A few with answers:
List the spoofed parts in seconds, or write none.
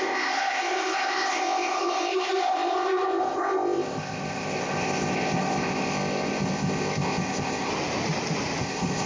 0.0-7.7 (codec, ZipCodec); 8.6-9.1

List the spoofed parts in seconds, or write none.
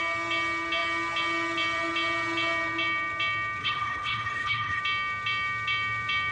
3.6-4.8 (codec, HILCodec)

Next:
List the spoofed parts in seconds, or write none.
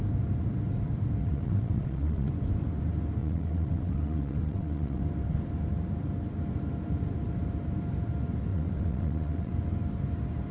1.2-2.3 (vocoder, WaveNeXt); 3.2-5.0; 8.5-9.5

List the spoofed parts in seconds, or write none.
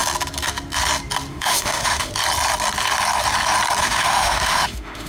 1.3-2.1 (autoencoder, DAC-VAE); 3.8-5.1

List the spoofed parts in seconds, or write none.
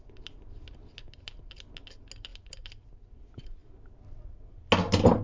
none